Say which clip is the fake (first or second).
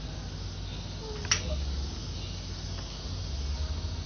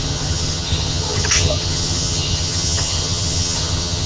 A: second